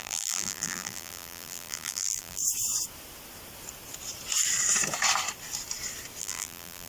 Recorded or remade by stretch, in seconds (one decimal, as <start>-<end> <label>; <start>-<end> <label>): 0.0-2.4 remade; 2.4-6.2 recorded; 6.2-6.9 remade